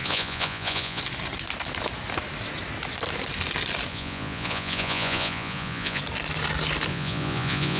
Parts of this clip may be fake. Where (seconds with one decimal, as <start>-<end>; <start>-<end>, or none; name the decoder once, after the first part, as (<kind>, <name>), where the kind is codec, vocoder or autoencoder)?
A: 0.0-1.0 (vocoder, Vocos); 3.9-6.0; 6.9-7.8